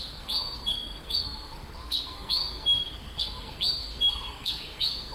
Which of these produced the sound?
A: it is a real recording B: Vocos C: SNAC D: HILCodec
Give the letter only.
C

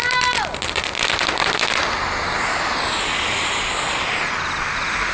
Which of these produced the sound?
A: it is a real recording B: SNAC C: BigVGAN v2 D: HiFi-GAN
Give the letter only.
A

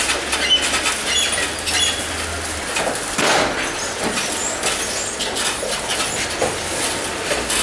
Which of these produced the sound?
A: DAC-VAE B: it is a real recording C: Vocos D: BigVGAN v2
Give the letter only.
B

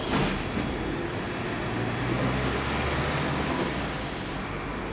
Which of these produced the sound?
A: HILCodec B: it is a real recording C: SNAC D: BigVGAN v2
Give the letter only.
B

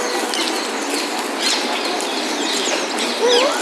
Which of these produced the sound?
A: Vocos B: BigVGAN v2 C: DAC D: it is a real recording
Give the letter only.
D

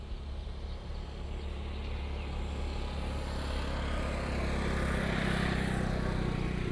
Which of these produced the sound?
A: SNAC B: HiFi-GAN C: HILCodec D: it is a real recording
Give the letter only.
D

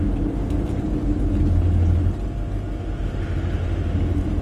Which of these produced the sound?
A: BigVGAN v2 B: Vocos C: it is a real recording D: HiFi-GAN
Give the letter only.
C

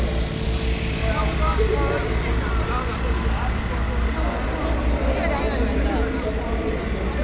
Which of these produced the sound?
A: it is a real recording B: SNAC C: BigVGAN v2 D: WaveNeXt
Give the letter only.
A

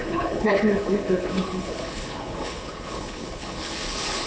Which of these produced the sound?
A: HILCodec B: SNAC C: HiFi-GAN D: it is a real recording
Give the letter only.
A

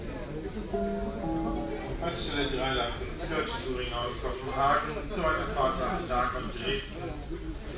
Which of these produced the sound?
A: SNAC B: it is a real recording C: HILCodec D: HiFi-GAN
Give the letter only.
B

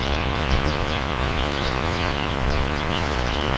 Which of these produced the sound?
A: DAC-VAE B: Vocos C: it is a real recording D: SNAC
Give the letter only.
B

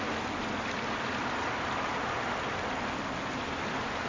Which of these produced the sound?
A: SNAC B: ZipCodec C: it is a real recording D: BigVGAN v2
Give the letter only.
C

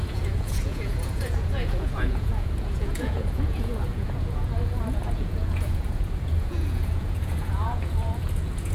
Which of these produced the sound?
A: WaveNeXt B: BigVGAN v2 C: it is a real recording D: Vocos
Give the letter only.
D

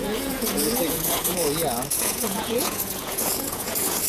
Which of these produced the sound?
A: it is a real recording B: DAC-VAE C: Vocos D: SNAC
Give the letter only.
C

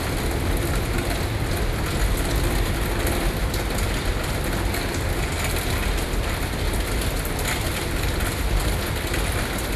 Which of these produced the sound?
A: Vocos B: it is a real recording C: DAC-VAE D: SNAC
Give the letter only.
B